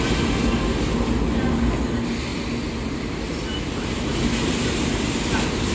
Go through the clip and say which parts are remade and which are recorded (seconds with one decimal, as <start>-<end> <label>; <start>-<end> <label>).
0.0-5.7 recorded